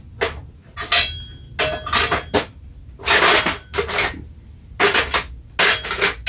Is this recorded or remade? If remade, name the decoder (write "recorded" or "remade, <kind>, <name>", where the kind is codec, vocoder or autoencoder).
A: recorded